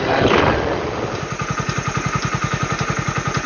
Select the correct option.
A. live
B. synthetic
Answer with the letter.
A